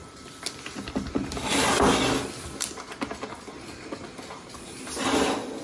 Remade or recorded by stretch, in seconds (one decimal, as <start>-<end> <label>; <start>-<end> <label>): 0.0-5.6 recorded